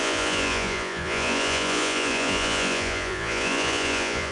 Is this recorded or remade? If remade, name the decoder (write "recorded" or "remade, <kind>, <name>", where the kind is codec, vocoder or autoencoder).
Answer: remade, vocoder, Vocos